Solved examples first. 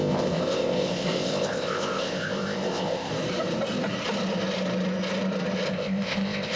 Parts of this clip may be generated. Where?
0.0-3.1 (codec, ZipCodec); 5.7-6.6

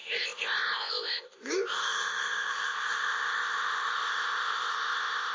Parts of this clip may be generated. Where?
0.0-5.3 (codec, ZipCodec)

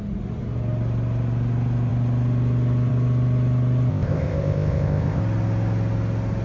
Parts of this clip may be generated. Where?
3.9-5.2 (codec, ZipCodec)

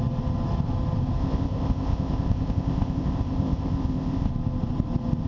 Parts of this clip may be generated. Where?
1.2-4.3 (codec, ZipCodec)

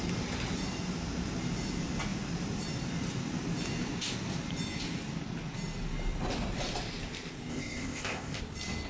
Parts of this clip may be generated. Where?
7.5-8.4 (codec, ZipCodec)

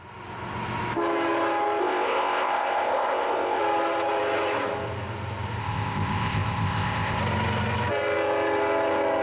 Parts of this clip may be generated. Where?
1.8-3.6 (codec, ZipCodec); 5.6-7.2

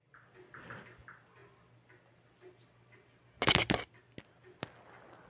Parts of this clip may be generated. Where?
none